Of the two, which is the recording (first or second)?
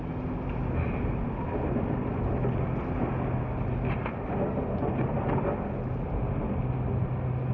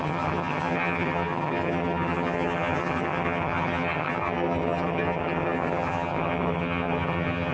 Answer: first